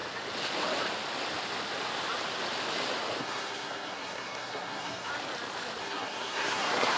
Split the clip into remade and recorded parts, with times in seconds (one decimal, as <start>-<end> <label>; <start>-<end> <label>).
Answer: 0.0-3.2 recorded; 3.2-5.1 remade; 5.1-5.8 recorded; 5.8-7.0 remade